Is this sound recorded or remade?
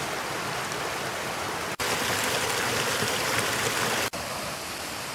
recorded